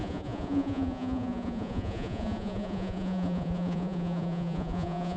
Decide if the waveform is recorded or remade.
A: remade